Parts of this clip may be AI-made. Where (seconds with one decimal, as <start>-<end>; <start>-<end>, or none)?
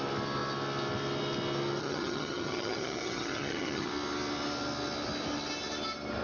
1.8-3.9